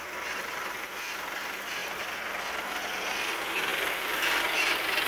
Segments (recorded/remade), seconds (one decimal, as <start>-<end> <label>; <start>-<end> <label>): 0.0-3.7 recorded; 3.7-5.1 remade